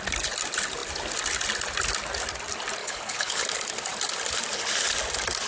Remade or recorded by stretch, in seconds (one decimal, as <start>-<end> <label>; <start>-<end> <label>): 0.0-2.8 recorded; 2.8-3.4 remade; 3.4-5.5 recorded